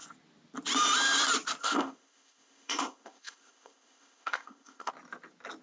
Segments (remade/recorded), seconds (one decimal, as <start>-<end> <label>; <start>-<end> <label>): 0.0-1.6 recorded; 1.6-4.9 remade; 4.9-5.6 recorded